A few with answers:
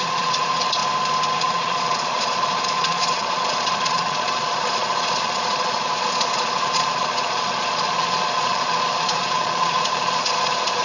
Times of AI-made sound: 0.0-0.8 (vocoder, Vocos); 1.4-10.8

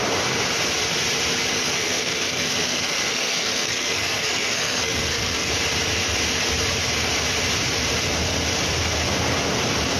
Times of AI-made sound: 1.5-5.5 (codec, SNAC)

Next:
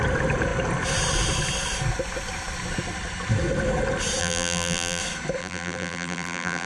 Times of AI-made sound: 4.2-5.0 (vocoder, BigVGAN v2); 5.4-6.7

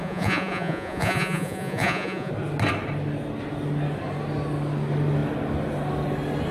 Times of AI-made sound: 0.0-2.3 (vocoder, Vocos)

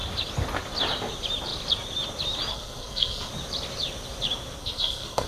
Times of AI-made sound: 2.5-3.3 (codec, SNAC); 4.6-5.3

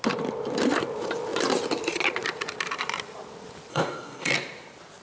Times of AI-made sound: 3.7-4.3 (codec, DAC)

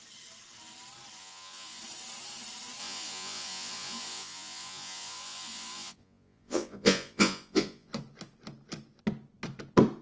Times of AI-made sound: 1.2-1.8 (vocoder, Vocos); 2.8-7.9